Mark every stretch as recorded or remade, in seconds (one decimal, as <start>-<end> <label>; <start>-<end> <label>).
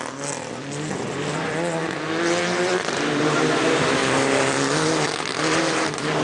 0.0-1.8 remade; 1.8-2.4 recorded; 2.4-6.2 remade